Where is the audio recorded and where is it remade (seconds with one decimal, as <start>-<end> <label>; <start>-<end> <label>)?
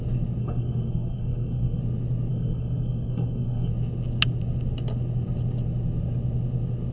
0.0-0.4 recorded; 0.4-1.8 remade; 1.8-2.3 recorded; 2.3-3.7 remade; 3.7-6.9 recorded